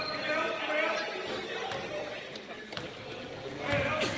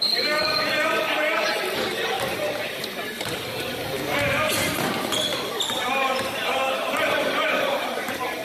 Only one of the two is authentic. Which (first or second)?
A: first